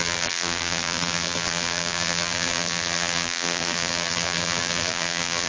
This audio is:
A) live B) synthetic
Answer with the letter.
B